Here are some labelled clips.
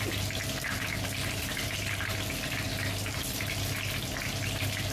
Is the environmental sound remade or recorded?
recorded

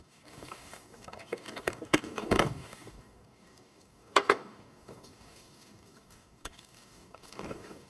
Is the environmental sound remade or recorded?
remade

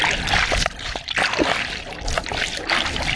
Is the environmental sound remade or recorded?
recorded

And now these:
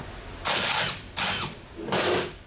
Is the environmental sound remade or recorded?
recorded